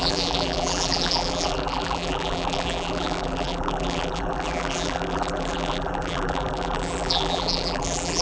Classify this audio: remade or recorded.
remade